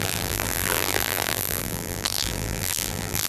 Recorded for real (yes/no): no